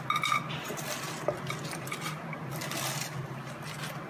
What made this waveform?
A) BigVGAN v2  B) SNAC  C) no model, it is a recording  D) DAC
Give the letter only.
C